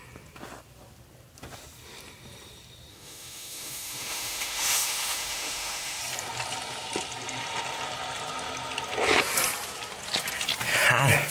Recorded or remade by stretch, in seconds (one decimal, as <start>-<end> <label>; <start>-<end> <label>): 0.0-2.9 recorded; 2.9-6.0 remade; 6.0-11.3 recorded

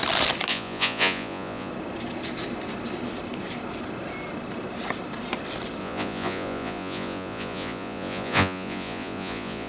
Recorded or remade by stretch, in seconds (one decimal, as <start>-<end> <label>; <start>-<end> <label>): 0.0-0.5 recorded; 0.5-1.7 remade; 1.7-5.8 recorded; 5.8-9.7 remade

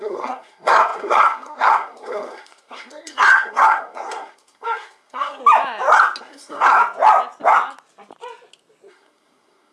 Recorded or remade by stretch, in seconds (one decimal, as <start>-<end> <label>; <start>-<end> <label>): 0.0-5.4 remade; 5.4-6.2 recorded; 6.2-6.8 remade; 6.8-8.9 recorded; 8.9-9.7 remade

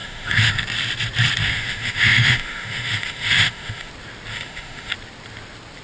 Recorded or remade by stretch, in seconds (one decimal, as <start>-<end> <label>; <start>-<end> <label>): 0.0-0.5 remade; 0.5-1.4 recorded; 1.4-3.9 remade; 3.9-4.3 recorded; 4.3-4.9 remade; 4.9-5.8 recorded

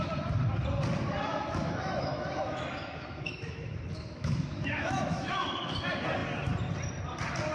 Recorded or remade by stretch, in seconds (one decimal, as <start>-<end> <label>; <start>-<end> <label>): 0.0-1.3 recorded; 1.3-5.8 remade; 5.8-7.5 recorded

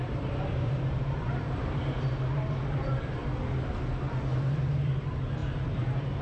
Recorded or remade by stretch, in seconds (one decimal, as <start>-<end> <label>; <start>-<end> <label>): 0.0-3.2 remade; 3.2-5.0 recorded; 5.0-6.2 remade

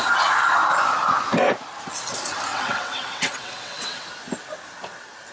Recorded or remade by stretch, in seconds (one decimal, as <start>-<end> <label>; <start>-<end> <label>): 0.0-2.5 recorded; 2.5-4.0 remade; 4.0-5.3 recorded

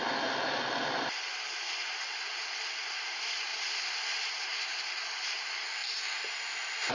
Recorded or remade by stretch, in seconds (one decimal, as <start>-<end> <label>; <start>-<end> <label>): 0.0-6.9 recorded